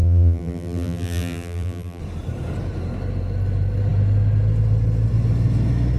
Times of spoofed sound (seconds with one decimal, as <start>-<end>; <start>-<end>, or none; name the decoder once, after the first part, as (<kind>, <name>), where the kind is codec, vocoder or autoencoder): 0.0-2.0 (vocoder, BigVGAN v2)